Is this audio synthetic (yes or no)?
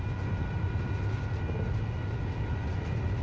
no